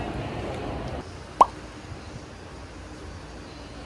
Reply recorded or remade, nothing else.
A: recorded